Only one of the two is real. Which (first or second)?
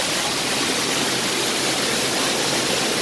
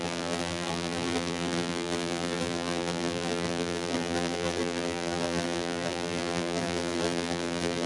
first